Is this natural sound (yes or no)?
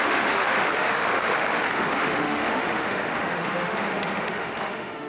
no